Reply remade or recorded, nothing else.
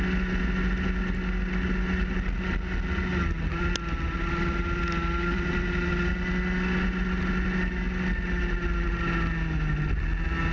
recorded